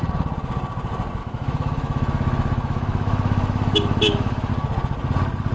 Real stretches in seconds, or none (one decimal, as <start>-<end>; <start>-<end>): 0.0-1.2; 4.5-5.5